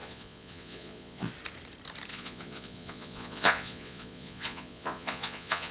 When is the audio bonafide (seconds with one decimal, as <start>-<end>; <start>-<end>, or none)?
1.3-2.1